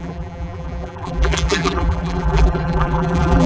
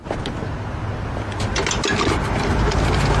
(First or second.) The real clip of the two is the second